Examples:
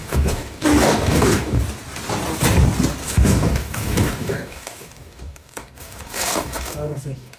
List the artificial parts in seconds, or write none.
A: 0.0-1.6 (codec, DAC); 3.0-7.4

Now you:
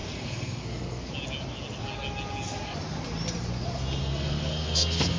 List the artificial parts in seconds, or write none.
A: 0.0-1.1 (codec, SNAC); 4.0-5.2